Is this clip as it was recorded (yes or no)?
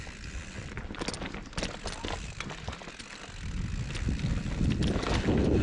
yes